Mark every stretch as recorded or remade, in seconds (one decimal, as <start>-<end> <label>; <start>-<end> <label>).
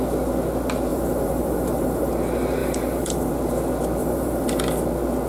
0.0-0.9 recorded; 0.9-2.1 remade; 2.1-2.6 recorded; 2.6-3.3 remade; 3.3-4.0 recorded; 4.0-4.6 remade; 4.6-5.3 recorded